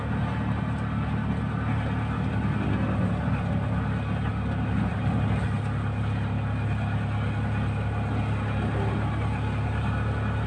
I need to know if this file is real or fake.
real